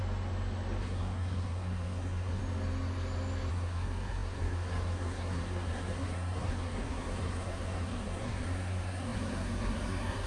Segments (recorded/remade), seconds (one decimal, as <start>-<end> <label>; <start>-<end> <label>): 0.0-0.8 recorded; 0.8-2.4 remade; 2.4-3.5 recorded; 3.5-10.3 remade